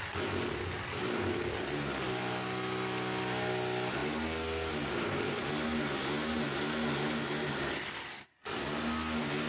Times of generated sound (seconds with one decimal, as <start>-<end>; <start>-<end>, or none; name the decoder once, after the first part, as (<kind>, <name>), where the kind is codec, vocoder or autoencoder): none